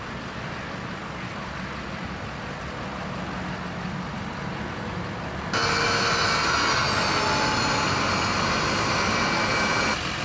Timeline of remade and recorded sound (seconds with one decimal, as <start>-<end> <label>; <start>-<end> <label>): 0.0-10.2 recorded